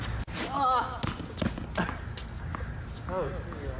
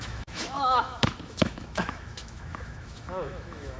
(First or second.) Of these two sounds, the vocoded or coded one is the second